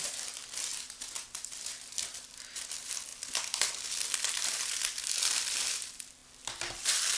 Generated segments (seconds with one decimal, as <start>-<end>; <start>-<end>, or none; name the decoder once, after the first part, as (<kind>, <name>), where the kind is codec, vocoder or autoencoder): 0.0-6.2 (vocoder, BigVGAN v2); 6.7-7.2